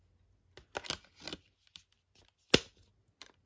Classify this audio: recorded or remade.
recorded